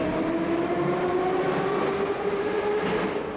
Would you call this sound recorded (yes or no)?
yes